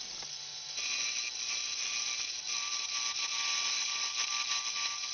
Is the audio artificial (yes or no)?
no